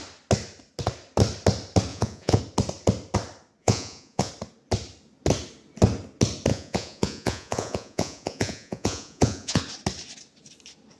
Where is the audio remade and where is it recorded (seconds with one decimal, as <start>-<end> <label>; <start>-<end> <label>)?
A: 0.0-1.9 recorded; 1.9-2.4 remade; 2.4-3.6 recorded; 3.6-4.3 remade; 4.3-6.5 recorded; 6.5-9.6 remade; 9.6-11.0 recorded